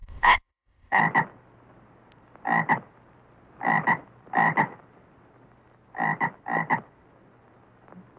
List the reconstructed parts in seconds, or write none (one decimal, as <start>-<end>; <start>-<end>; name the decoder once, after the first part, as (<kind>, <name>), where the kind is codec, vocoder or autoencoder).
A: 0.0-1.0 (codec, ZipCodec)